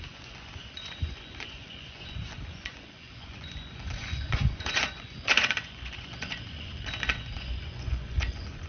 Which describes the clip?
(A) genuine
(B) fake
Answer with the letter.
B